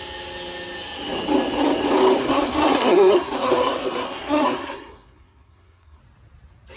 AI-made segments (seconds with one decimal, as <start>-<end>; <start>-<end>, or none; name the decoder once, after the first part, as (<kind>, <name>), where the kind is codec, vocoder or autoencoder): 2.2-6.0 (codec, SNAC)